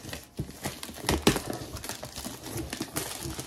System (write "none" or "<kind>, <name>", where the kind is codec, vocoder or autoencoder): none